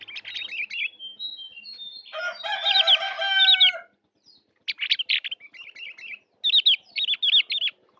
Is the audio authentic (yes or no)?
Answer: yes